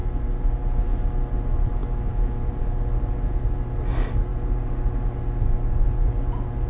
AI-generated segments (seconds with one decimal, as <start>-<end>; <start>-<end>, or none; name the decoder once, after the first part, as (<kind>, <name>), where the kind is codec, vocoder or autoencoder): none